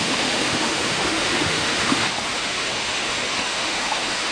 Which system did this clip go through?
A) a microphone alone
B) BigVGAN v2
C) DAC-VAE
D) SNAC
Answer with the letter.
C